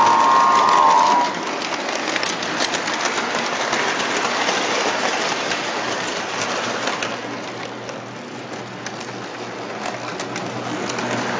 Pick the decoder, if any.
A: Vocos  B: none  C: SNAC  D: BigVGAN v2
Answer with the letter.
B